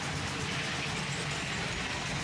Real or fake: fake